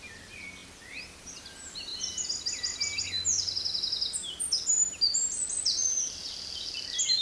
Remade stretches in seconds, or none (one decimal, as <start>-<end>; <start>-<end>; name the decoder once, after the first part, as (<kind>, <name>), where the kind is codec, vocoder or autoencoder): none